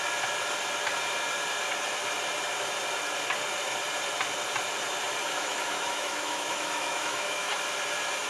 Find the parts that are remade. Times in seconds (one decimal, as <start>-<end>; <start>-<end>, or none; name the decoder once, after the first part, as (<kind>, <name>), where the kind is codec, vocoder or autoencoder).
5.2-7.5 (autoencoder, DAC-VAE)